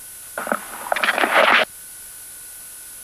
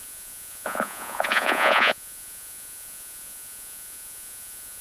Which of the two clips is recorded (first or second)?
first